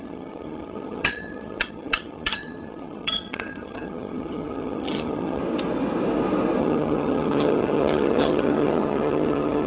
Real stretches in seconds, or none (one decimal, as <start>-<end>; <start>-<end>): 5.4-6.6